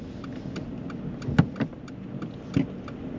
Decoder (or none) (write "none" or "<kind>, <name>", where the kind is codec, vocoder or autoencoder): none